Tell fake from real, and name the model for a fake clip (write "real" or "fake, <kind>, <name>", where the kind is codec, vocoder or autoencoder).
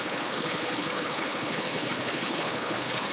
fake, codec, HILCodec